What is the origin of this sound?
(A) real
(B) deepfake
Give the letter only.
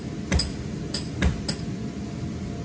A